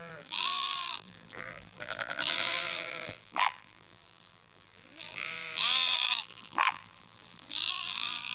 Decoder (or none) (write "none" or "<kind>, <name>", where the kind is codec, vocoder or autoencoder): vocoder, BigVGAN v2